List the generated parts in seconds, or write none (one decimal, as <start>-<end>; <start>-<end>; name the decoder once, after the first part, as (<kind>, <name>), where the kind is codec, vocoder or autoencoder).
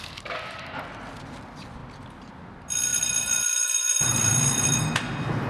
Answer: 2.9-4.9 (vocoder, BigVGAN v2)